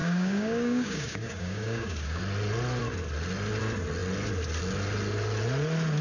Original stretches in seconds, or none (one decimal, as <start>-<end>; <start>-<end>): 2.2-6.0